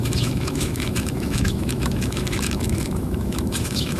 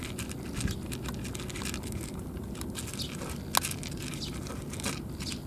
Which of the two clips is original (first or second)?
second